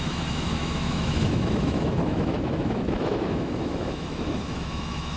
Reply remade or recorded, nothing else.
remade